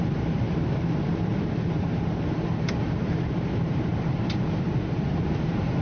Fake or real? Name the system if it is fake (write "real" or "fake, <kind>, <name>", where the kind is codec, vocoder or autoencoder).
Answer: fake, vocoder, BigVGAN v2